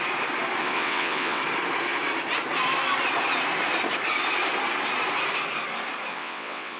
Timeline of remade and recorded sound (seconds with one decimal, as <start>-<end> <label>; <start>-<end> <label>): 0.0-0.6 recorded; 0.6-1.4 remade; 1.4-6.1 recorded; 6.1-6.8 remade